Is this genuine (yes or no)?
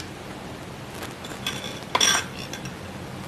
yes